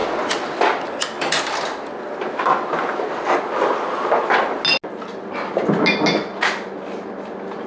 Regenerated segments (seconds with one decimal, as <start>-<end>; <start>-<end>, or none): none